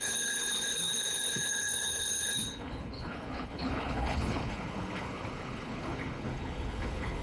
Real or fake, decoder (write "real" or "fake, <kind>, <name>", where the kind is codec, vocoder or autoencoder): fake, codec, HILCodec